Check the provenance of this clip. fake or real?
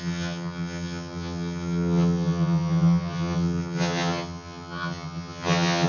fake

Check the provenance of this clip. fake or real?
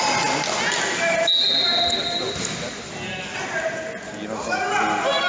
real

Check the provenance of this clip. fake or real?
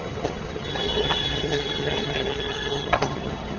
fake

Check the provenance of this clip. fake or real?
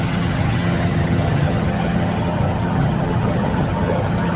fake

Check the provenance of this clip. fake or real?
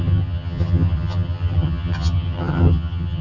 fake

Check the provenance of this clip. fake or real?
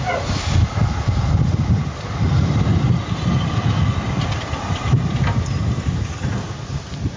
real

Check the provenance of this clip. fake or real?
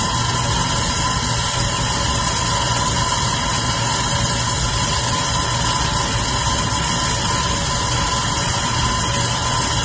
real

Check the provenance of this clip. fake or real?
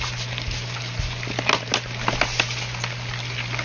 real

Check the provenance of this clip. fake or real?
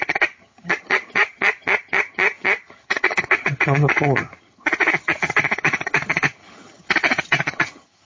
fake